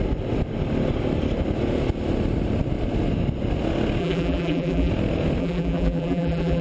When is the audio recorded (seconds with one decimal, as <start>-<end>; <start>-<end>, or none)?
0.0-4.0; 4.9-5.4